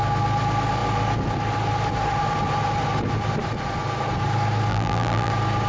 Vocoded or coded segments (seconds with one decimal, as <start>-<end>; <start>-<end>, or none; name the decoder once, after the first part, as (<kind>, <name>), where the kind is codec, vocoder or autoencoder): 4.7-5.3 (vocoder, BigVGAN v2)